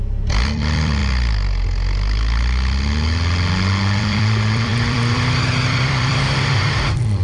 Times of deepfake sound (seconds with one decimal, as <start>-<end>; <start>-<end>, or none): 0.0-1.0; 4.0-7.2